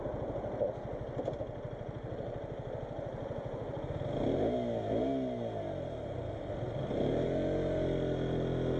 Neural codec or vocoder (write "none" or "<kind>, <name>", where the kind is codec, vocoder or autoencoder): none